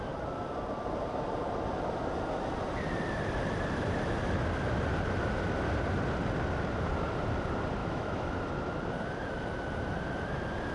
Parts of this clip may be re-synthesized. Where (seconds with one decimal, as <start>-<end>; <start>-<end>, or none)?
7.8-8.4

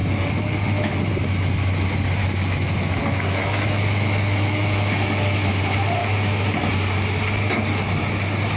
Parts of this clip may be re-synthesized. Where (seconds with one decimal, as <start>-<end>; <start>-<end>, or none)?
0.0-1.1; 2.2-5.5; 6.0-6.7